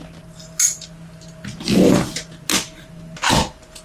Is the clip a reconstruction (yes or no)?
no